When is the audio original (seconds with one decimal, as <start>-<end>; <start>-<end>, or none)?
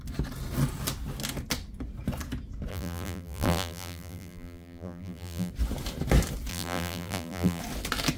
0.0-2.7; 5.5-6.5; 7.6-8.2